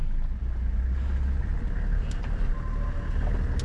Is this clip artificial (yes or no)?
no